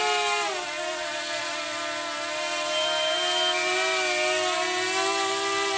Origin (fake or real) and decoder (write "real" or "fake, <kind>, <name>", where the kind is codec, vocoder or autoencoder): real